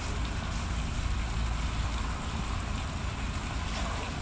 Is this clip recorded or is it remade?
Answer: recorded